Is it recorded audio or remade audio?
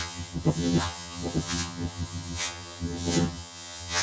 remade